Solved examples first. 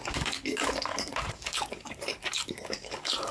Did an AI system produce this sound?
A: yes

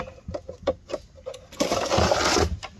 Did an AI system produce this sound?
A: no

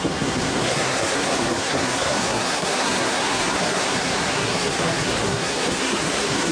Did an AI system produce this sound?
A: yes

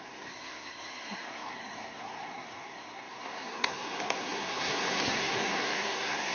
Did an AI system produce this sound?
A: yes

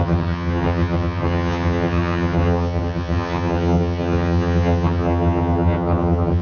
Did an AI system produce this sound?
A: yes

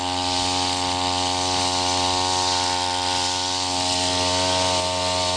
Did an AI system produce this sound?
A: no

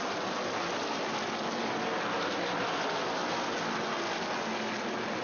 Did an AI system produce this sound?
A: no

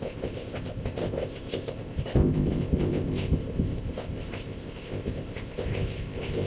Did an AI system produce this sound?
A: yes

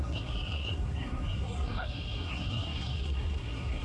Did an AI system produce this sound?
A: yes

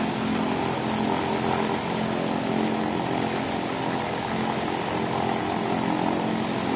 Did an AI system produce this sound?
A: no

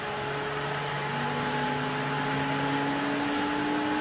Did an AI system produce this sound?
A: no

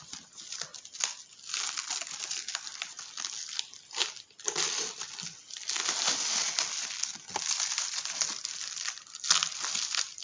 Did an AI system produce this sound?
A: no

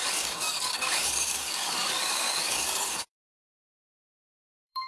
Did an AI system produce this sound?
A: yes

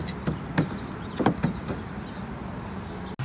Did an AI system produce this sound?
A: no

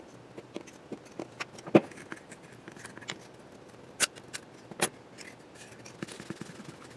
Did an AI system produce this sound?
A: no